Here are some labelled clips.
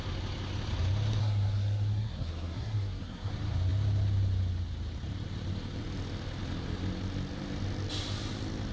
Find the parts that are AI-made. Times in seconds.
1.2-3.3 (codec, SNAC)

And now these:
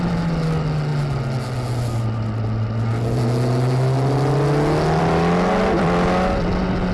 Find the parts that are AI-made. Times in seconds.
none

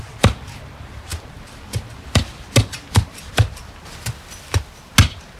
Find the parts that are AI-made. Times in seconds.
none